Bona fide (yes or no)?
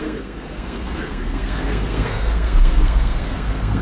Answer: no